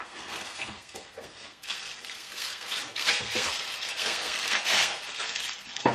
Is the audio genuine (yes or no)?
no